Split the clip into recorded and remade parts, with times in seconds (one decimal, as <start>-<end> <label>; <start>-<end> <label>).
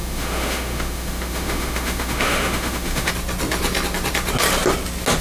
0.0-3.1 remade; 3.1-5.2 recorded